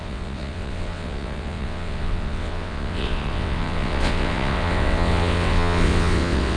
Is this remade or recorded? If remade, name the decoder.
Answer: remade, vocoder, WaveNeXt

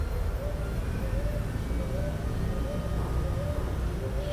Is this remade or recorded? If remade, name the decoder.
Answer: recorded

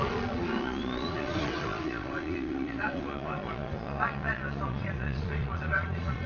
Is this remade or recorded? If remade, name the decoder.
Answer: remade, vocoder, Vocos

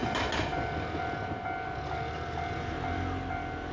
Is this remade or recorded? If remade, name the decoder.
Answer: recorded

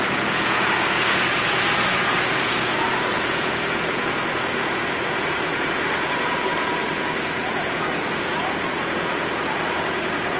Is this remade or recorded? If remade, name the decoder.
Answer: remade, vocoder, Vocos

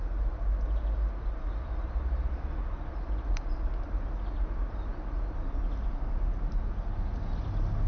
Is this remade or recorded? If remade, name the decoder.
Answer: recorded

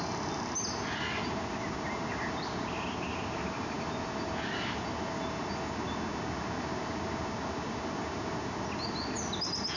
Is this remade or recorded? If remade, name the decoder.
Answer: recorded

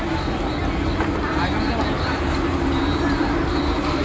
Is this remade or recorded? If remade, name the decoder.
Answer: recorded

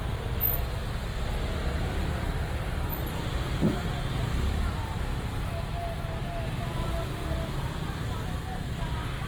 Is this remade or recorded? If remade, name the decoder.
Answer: recorded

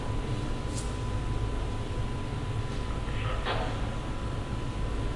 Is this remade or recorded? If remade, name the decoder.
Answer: recorded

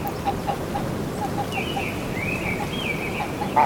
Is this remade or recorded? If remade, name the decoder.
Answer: recorded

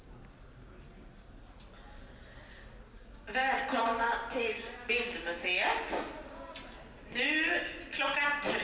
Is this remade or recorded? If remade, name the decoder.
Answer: recorded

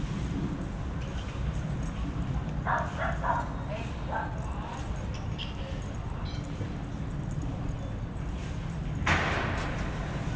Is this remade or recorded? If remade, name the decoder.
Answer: recorded